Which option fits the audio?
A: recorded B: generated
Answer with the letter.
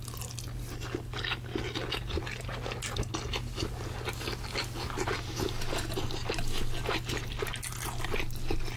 A